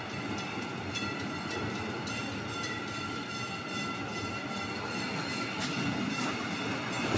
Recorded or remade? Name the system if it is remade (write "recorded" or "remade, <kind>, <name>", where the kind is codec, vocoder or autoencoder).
recorded